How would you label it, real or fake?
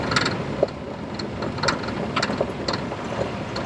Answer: real